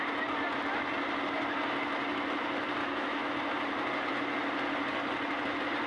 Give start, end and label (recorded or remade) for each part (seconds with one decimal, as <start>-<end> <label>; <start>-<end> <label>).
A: 0.0-2.8 recorded; 2.8-3.3 remade; 3.3-5.9 recorded